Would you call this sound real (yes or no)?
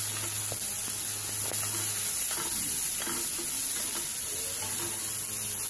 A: yes